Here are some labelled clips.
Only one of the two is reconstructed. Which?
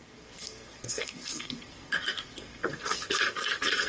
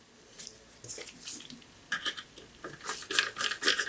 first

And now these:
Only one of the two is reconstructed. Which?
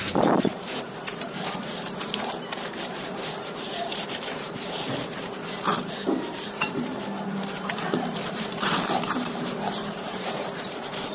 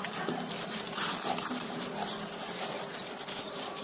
first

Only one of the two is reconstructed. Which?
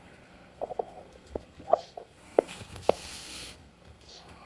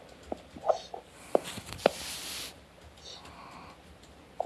first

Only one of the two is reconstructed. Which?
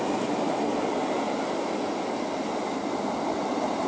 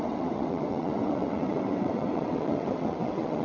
second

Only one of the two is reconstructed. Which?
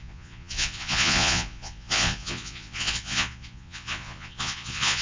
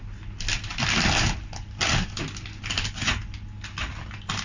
first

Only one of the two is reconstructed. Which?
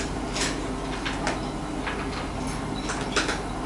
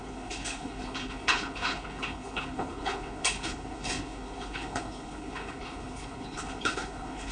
second